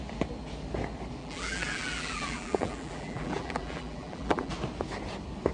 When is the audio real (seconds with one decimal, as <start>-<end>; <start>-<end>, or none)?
0.0-1.2; 4.5-5.5